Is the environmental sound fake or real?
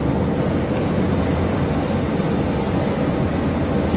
real